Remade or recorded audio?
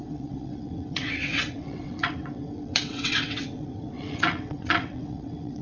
remade